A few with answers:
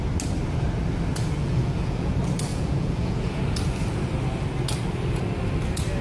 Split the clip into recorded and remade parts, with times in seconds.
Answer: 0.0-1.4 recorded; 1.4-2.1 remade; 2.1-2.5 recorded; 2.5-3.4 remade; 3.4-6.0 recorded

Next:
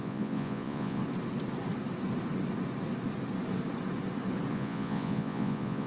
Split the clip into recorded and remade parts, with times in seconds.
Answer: 0.0-1.0 remade; 1.0-4.5 recorded; 4.5-5.9 remade